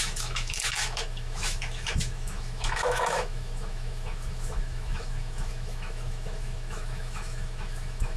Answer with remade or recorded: remade